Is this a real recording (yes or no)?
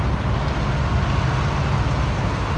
yes